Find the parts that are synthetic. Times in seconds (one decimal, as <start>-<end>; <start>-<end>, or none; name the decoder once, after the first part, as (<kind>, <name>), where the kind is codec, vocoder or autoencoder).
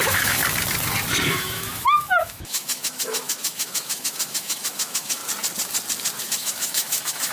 0.0-0.4 (autoencoder, DAC-VAE); 1.3-5.2; 6.2-7.3